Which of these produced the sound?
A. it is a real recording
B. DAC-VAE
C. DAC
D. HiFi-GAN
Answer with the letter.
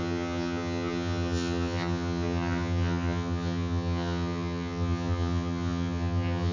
D